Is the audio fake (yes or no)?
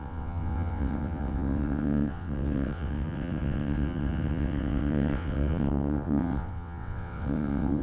yes